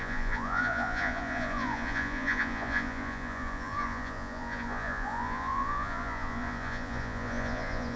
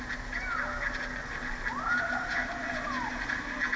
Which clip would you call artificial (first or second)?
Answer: first